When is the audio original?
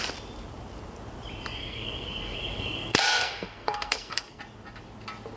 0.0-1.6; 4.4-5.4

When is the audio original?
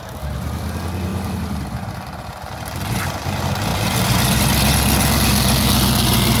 0.0-1.1; 1.6-3.7; 4.4-6.4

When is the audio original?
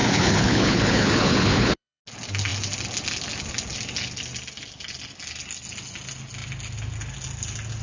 2.0-7.8